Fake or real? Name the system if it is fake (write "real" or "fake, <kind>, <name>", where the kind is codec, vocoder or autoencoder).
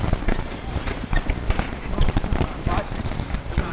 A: fake, vocoder, BigVGAN v2